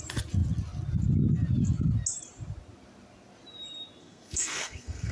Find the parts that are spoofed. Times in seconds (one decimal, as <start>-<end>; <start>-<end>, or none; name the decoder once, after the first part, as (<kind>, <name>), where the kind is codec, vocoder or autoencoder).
4.0-5.1 (codec, SNAC)